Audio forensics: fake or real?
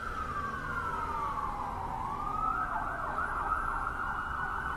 real